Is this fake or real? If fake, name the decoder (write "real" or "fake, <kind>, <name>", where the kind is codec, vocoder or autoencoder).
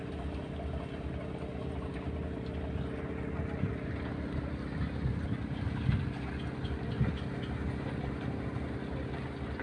real